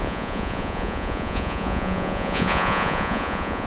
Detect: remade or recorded remade